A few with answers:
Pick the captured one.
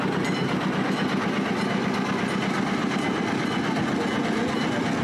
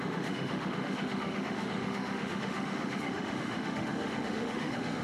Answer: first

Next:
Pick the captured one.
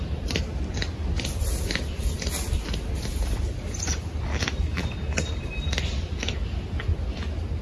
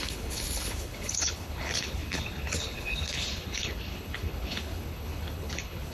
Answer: first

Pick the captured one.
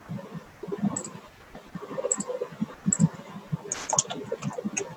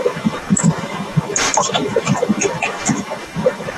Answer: first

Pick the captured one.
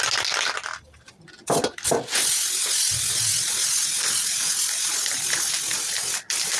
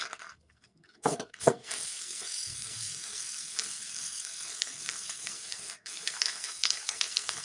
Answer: first